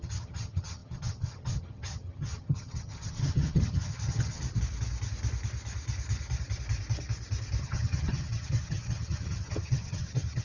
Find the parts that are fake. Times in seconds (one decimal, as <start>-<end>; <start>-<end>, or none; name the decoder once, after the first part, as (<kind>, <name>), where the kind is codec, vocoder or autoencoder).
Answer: 0.0-4.4 (vocoder, HiFi-GAN); 7.6-10.4